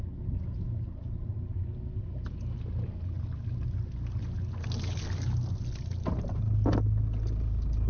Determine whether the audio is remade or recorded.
recorded